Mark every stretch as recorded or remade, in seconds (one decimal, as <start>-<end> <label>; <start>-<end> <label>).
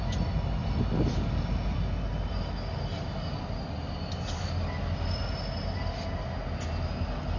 0.0-7.4 recorded